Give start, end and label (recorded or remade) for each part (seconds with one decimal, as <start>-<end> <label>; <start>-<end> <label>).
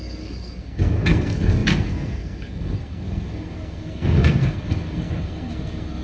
0.0-6.0 remade